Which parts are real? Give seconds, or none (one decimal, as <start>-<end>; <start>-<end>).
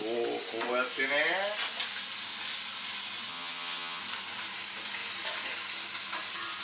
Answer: 0.0-3.3; 4.0-6.6